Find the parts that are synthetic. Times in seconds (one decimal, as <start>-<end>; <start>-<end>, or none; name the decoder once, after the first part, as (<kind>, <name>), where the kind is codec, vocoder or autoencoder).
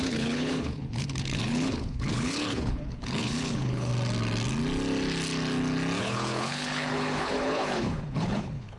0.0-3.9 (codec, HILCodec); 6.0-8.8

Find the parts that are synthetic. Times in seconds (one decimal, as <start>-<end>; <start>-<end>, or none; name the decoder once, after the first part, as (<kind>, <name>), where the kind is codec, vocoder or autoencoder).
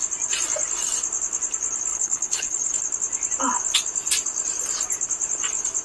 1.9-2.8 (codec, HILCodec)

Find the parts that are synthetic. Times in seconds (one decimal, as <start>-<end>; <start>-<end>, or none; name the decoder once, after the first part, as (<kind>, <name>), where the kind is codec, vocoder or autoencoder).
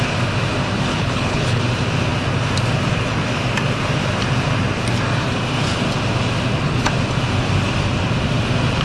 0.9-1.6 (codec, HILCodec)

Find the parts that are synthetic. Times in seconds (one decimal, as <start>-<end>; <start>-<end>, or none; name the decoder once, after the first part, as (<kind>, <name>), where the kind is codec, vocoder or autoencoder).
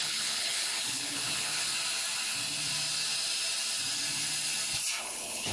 0.0-1.7 (codec, HILCodec); 5.0-5.5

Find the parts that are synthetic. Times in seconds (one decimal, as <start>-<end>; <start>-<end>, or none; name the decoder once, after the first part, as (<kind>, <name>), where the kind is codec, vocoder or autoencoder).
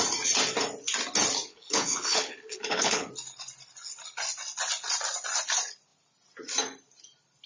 1.5-3.1 (codec, HILCodec)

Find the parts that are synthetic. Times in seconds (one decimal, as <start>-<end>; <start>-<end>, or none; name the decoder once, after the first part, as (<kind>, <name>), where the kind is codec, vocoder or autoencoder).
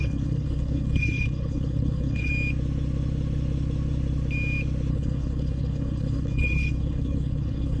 0.0-2.3 (codec, HILCodec); 4.9-7.8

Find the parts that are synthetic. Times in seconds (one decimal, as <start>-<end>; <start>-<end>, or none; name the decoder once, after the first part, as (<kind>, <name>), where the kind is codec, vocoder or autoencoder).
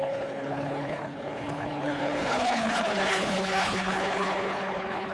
0.0-5.1 (codec, HILCodec)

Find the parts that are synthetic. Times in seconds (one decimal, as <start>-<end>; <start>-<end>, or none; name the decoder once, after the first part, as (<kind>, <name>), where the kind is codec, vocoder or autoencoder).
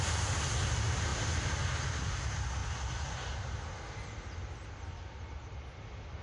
none